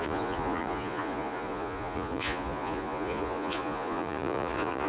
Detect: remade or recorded remade